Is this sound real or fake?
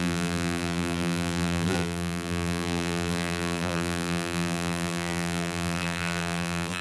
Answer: fake